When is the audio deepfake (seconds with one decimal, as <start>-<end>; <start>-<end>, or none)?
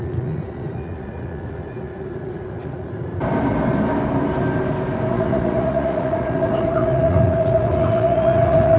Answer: 0.0-3.1; 5.1-8.8